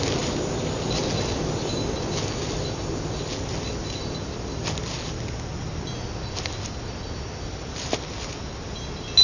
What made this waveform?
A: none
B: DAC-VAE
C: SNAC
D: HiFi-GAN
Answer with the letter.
A